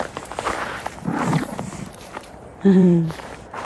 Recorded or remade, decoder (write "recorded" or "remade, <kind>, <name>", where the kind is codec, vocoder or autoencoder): remade, vocoder, BigVGAN v2